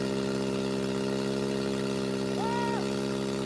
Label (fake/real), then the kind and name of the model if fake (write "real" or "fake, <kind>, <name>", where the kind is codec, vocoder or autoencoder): real